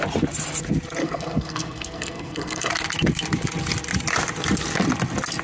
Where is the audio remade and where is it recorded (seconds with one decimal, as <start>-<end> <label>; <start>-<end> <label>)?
0.0-1.0 recorded; 1.0-2.7 remade; 2.7-5.4 recorded